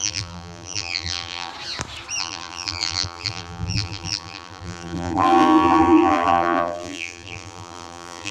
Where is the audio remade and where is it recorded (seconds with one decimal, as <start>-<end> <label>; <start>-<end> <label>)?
0.0-1.5 remade; 1.5-2.2 recorded; 2.2-8.3 remade